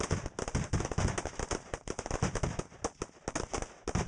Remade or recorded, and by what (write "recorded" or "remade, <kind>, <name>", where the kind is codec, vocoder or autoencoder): recorded